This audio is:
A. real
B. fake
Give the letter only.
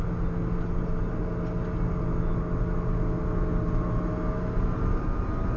A